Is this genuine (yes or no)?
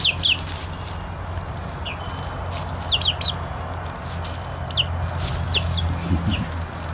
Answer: yes